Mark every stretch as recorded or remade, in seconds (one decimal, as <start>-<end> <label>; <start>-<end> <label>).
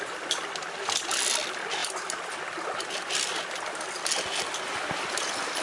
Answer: 0.0-5.6 recorded